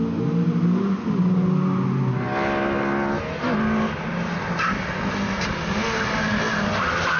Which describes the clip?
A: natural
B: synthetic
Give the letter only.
A